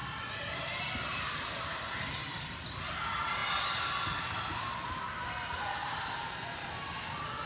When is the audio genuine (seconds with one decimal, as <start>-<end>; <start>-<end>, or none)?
2.4-5.8; 6.7-7.5